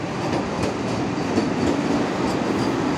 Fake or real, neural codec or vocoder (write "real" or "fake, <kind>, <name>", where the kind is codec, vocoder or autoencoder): real